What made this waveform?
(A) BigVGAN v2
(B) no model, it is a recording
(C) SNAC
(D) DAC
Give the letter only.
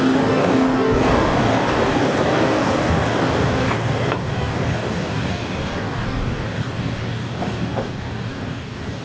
D